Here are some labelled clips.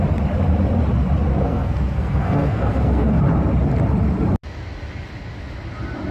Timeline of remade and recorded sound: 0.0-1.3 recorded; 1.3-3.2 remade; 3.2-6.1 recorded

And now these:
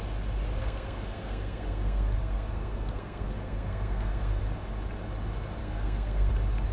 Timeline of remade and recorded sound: 0.0-0.6 recorded; 0.6-4.4 remade; 4.4-5.6 recorded; 5.6-6.3 remade; 6.3-6.7 recorded

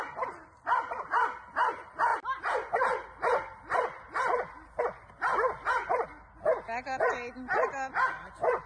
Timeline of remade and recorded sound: 0.0-8.7 recorded

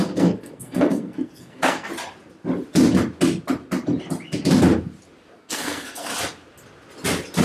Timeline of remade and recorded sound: 0.0-1.9 remade; 1.9-5.4 recorded; 5.4-6.1 remade; 6.1-7.4 recorded